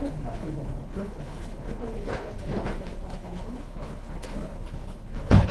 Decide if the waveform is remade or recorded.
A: remade